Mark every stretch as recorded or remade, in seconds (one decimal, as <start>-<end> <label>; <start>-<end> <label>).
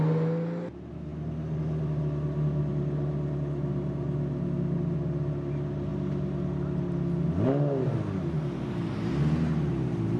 0.0-10.2 recorded